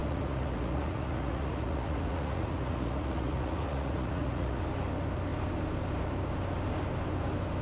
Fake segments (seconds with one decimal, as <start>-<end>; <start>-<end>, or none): 0.0-4.6